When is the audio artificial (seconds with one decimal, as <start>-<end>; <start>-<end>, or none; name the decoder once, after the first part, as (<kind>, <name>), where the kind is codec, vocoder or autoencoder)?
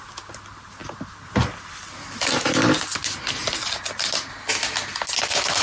none